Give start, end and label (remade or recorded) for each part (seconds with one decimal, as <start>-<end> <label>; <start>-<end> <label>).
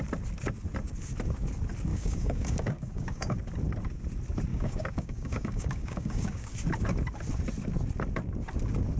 0.0-1.9 recorded; 1.9-3.4 remade; 3.4-4.5 recorded; 4.5-6.5 remade; 6.5-9.0 recorded